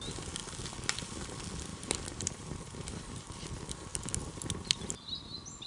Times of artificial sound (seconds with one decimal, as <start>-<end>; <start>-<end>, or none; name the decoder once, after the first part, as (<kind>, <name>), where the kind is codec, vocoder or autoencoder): 1.7-3.5 (vocoder, BigVGAN v2)

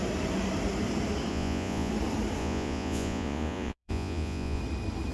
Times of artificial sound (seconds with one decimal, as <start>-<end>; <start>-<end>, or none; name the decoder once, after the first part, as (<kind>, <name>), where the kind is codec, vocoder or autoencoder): 1.3-1.9 (vocoder, Vocos); 2.4-4.6

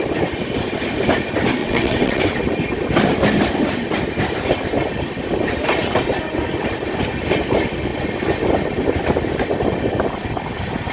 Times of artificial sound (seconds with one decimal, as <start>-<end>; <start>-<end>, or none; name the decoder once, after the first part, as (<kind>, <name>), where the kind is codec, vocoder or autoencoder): 1.6-2.2 (vocoder, WaveNeXt)

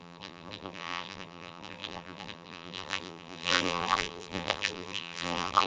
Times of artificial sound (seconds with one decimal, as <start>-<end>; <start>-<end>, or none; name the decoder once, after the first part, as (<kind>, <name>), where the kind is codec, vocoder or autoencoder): 0.0-5.7 (vocoder, BigVGAN v2)

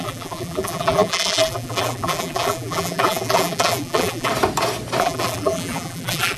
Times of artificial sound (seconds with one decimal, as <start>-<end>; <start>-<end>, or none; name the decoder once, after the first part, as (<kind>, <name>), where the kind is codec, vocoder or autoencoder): 0.0-4.3 (vocoder, BigVGAN v2); 5.0-6.4

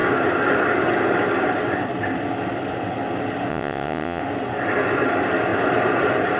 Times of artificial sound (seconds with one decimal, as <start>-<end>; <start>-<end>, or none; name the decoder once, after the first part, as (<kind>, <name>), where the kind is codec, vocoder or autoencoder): 3.5-4.2 (vocoder, WaveNeXt)

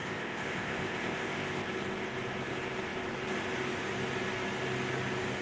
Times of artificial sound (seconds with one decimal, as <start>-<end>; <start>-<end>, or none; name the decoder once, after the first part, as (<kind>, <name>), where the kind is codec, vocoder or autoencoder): 0.0-1.7 (codec, ZipCodec)